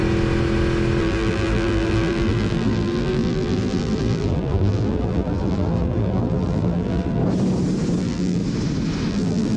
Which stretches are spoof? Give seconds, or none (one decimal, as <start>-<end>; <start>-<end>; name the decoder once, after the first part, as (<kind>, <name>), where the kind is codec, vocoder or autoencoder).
1.0-7.2 (vocoder, BigVGAN v2); 8.0-8.4; 9.1-9.6